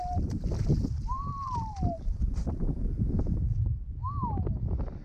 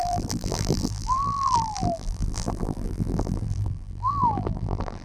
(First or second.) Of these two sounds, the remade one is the second